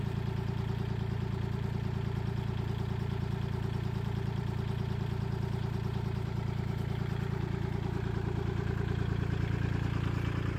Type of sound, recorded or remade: remade